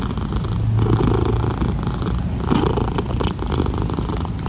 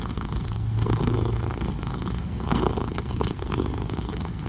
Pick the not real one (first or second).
second